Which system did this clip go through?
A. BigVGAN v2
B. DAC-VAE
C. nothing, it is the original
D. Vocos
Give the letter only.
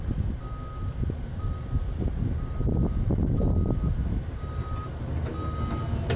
C